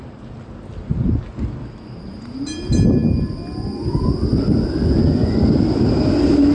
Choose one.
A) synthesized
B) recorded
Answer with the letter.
B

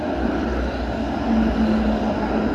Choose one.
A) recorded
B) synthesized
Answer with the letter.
A